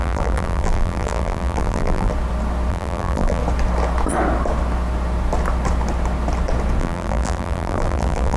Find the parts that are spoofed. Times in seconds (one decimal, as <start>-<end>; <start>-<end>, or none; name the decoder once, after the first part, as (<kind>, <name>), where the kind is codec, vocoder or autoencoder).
0.0-2.1 (vocoder, BigVGAN v2); 2.7-3.4; 6.8-8.4